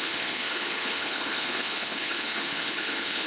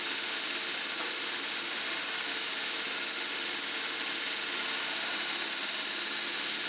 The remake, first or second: first